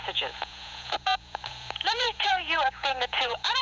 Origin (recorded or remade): remade